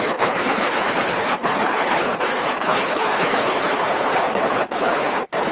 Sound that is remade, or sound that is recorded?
remade